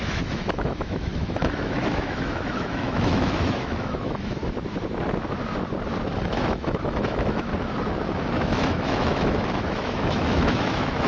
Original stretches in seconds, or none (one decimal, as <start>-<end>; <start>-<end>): 4.4-6.2; 7.5-8.3